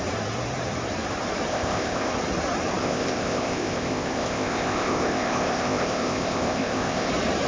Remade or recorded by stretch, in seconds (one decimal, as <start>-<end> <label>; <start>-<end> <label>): 0.0-1.5 recorded; 1.5-2.1 remade; 2.1-2.8 recorded; 2.8-7.1 remade; 7.1-7.5 recorded